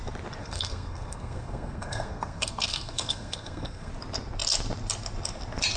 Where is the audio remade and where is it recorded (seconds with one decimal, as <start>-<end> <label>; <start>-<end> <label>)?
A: 0.0-0.4 recorded; 0.4-3.9 remade; 3.9-5.8 recorded